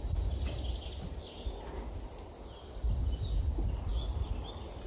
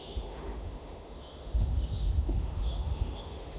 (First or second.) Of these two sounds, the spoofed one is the second